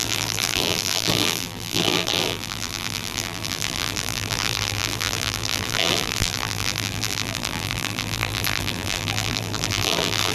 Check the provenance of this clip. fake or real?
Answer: fake